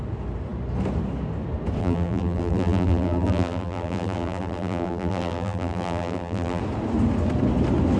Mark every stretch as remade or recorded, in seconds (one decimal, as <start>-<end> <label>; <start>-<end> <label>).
0.0-1.8 recorded; 1.8-6.6 remade; 6.6-8.0 recorded